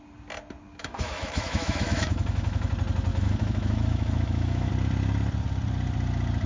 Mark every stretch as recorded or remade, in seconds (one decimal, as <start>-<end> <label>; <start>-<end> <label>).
0.0-0.8 recorded; 0.8-2.7 remade; 2.7-3.1 recorded; 3.1-4.7 remade; 4.7-6.5 recorded